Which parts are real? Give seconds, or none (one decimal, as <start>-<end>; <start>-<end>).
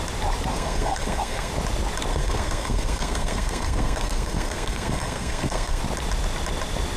0.0-0.5; 1.5-2.1; 5.8-7.0